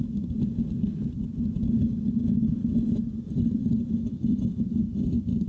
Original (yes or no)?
yes